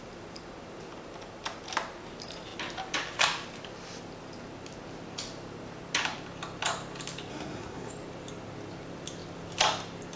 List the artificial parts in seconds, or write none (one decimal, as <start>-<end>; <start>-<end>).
7.3-7.9